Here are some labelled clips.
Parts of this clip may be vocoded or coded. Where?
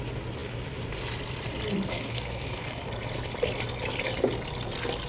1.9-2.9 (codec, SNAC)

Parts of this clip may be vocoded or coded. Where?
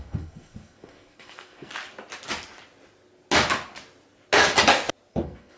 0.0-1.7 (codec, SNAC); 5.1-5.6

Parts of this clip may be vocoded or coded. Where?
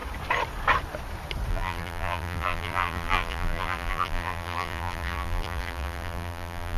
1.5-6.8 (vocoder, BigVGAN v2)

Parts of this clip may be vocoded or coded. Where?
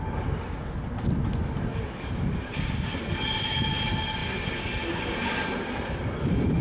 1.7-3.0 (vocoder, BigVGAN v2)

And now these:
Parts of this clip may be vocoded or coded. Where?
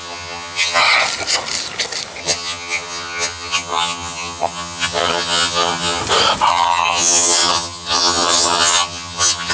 0.0-0.8 (vocoder, HiFi-GAN); 2.2-6.0; 6.5-9.5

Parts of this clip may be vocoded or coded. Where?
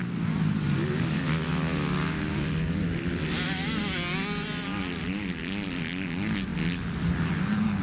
none